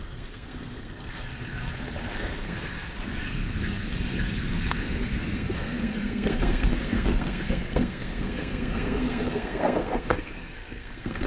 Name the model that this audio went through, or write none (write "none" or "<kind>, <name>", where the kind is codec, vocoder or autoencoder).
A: codec, SNAC